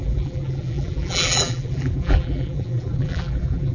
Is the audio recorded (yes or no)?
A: no